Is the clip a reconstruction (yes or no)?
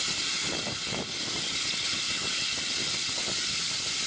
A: no